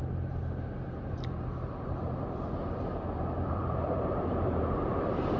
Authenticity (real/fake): fake